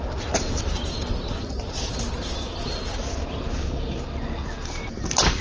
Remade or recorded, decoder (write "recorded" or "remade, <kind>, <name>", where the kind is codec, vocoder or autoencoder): recorded